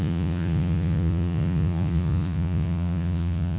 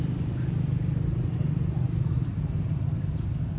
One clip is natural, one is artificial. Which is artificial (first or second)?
first